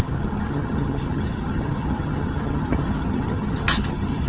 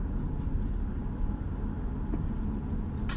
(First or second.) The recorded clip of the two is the second